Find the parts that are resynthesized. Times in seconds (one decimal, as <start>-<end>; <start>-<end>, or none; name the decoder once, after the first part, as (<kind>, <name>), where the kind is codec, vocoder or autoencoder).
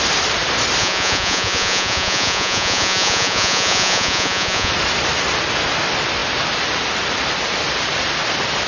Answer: 0.8-4.7 (vocoder, Vocos)